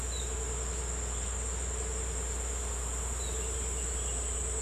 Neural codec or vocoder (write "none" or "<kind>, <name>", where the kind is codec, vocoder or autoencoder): none